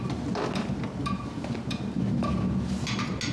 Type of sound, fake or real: real